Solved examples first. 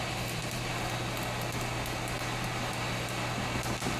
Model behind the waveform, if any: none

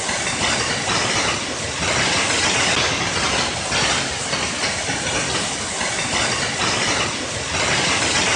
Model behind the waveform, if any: none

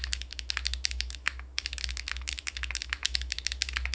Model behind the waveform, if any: autoencoder, DAC-VAE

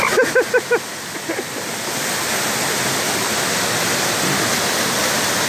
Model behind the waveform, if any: none